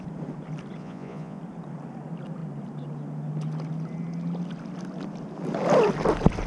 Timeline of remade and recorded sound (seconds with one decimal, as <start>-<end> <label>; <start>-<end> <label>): 0.0-0.8 recorded; 0.8-1.4 remade; 1.4-6.5 recorded